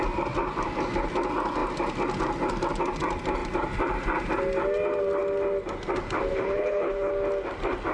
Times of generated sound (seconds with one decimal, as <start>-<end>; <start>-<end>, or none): 6.3-7.1